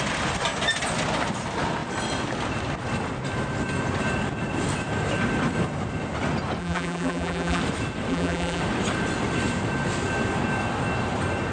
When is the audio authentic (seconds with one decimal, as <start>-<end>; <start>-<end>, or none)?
0.0-6.6; 7.6-8.1; 8.6-11.5